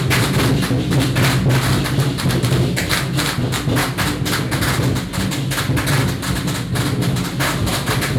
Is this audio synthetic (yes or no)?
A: no